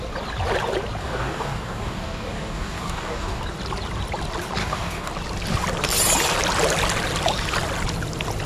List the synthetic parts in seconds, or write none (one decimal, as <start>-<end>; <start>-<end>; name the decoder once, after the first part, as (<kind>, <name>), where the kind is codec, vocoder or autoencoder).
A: 1.0-3.4 (codec, DAC); 4.6-5.1